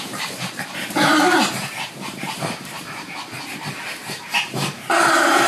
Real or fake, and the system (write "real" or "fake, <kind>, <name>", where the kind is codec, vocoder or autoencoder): fake, vocoder, BigVGAN v2